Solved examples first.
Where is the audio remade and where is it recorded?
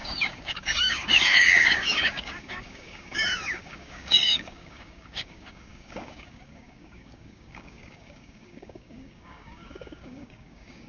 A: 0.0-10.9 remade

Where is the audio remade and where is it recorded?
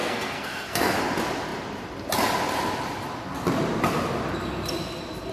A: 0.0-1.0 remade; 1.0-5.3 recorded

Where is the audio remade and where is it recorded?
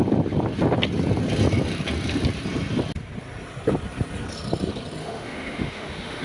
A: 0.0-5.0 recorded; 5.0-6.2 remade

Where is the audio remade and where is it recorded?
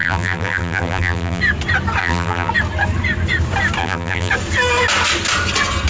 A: 0.0-1.4 remade; 1.4-2.0 recorded; 2.0-2.5 remade; 2.5-3.8 recorded; 3.8-4.3 remade; 4.3-5.9 recorded